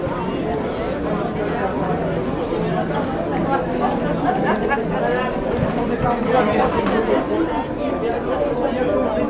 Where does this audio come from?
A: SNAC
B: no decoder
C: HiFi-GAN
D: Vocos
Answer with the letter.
B